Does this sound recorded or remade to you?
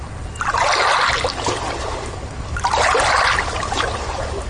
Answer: recorded